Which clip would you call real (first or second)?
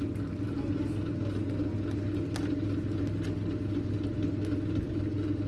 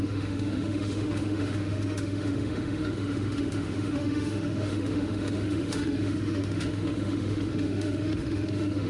first